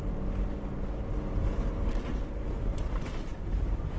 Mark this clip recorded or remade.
recorded